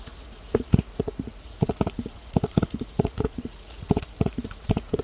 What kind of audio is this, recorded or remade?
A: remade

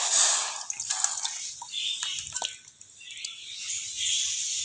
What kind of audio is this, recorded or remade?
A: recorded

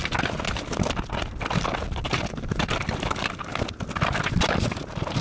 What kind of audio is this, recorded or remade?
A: recorded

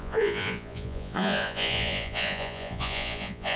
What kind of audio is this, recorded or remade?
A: remade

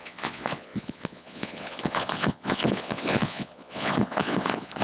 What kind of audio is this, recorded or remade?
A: remade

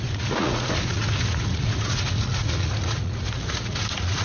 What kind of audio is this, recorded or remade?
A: remade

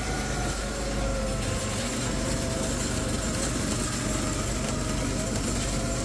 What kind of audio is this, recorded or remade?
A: recorded